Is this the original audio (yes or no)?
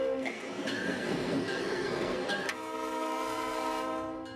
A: no